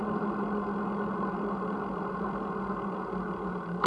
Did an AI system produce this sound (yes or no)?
no